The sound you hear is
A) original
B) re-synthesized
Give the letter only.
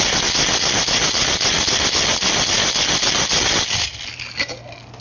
A